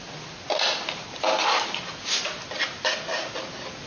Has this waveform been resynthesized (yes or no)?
no